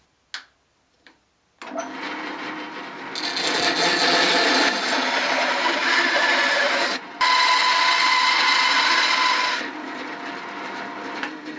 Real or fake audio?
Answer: real